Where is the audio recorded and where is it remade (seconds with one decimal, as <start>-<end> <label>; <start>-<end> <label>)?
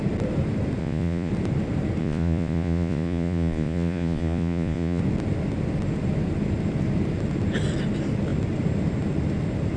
0.0-0.8 recorded; 0.8-1.3 remade; 1.3-2.0 recorded; 2.0-5.0 remade; 5.0-9.8 recorded